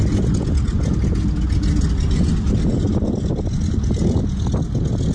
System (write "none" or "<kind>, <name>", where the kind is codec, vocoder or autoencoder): none